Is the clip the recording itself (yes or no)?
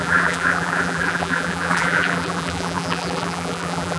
no